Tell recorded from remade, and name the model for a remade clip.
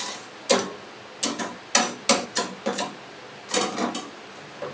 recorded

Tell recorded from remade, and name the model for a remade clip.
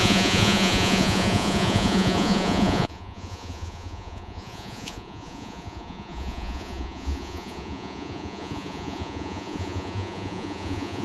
remade, vocoder, Vocos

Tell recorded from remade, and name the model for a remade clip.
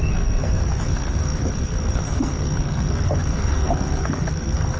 remade, codec, SNAC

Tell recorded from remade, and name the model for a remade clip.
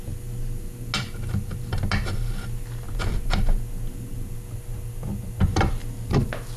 recorded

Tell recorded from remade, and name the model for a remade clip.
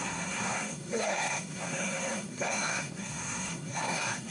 remade, codec, SNAC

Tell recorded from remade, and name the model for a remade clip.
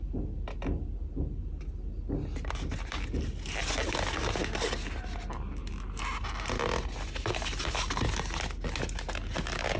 recorded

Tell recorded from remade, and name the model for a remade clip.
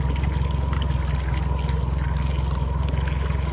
recorded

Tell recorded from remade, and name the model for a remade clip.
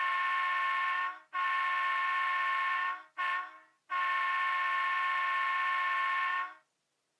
recorded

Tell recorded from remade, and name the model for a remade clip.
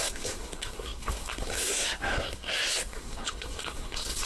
remade, codec, SNAC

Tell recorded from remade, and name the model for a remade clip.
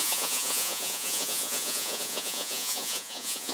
remade, vocoder, Vocos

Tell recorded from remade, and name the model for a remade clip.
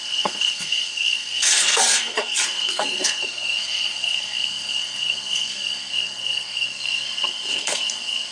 remade, codec, SNAC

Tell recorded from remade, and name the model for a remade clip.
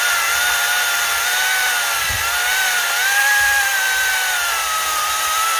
recorded